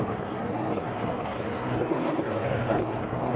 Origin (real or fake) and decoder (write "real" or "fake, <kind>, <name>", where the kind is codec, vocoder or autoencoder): fake, codec, SNAC